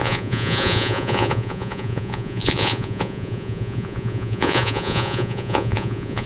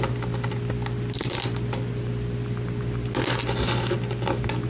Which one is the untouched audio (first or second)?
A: second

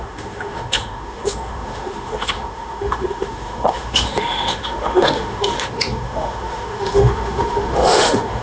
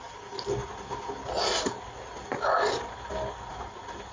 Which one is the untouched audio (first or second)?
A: second